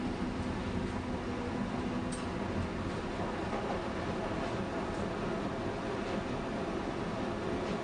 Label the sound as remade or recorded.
recorded